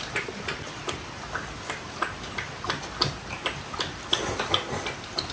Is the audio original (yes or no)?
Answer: yes